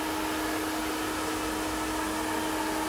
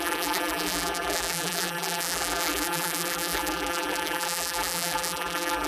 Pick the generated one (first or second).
second